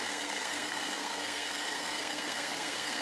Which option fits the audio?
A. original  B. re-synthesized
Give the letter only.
B